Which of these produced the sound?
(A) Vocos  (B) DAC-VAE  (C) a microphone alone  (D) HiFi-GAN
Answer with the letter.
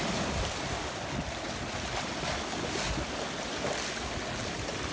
C